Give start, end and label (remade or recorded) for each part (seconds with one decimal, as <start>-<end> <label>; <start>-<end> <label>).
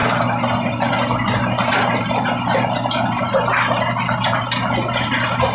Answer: 0.0-5.5 recorded